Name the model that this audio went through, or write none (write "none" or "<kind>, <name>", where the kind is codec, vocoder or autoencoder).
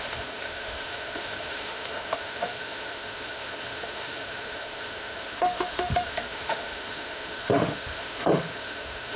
autoencoder, DAC-VAE